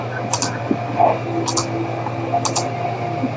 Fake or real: real